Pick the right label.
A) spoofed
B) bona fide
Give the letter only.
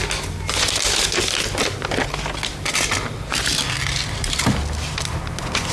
B